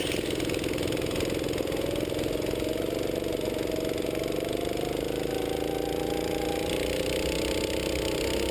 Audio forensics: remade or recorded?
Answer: recorded